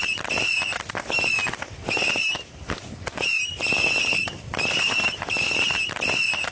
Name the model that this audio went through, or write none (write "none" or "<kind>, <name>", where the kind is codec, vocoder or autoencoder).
vocoder, BigVGAN v2